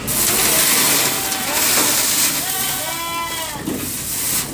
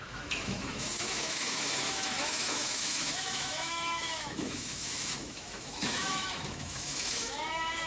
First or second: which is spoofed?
second